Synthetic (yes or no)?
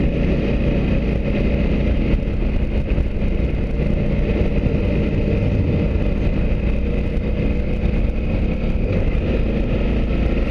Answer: no